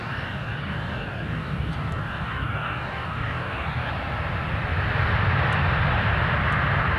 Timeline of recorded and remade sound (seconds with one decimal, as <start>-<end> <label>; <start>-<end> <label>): 0.0-3.9 remade; 3.9-7.0 recorded